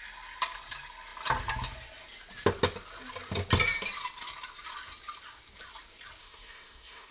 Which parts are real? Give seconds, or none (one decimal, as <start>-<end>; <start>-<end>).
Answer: 0.0-6.2